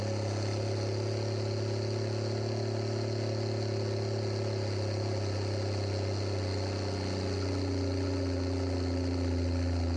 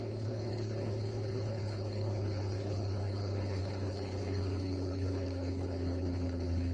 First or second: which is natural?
first